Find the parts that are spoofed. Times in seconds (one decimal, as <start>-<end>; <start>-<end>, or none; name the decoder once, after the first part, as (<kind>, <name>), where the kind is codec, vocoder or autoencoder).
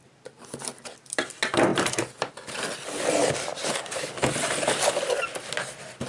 1.7-2.2 (vocoder, BigVGAN v2); 3.5-4.1